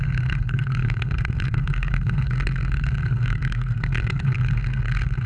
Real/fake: fake